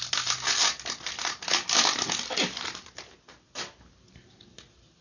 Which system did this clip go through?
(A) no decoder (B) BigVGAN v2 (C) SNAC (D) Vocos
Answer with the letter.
A